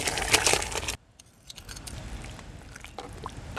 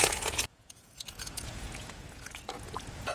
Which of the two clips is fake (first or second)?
second